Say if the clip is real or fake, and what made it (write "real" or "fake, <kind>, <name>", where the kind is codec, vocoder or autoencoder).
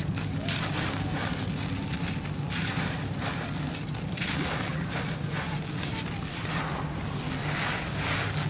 real